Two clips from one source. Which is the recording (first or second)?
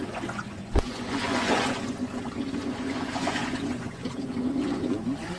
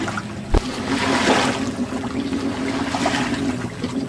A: second